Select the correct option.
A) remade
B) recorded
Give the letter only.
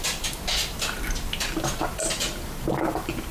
B